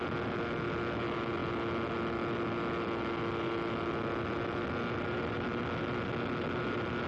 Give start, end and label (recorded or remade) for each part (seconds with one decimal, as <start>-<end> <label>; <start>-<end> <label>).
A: 0.0-7.1 recorded